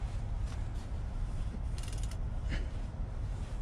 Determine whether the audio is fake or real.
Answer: fake